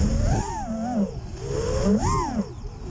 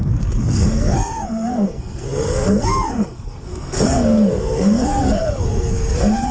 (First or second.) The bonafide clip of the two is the first